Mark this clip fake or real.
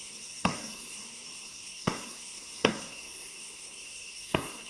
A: fake